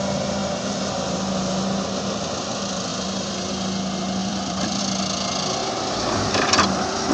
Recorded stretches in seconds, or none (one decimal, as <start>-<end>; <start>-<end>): 0.0-2.9; 3.5-4.2; 4.8-5.6